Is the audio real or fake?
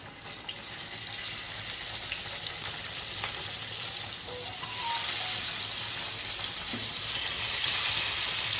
real